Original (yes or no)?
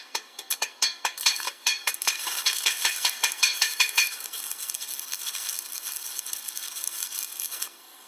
no